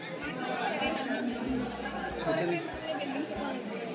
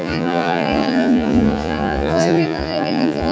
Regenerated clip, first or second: second